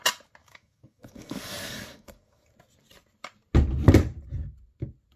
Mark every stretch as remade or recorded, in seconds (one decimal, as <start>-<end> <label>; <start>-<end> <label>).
0.0-0.4 recorded; 0.4-2.5 remade; 2.5-5.2 recorded

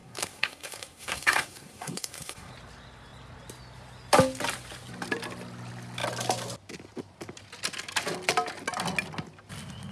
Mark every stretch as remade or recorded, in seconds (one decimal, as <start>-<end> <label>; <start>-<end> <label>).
0.0-2.5 remade; 2.5-9.9 recorded

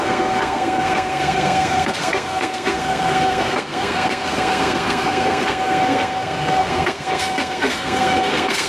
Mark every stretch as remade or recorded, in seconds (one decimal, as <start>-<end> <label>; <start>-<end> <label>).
0.0-8.7 remade